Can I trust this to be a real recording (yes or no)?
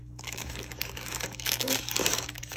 no